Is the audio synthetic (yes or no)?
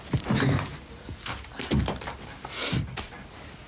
no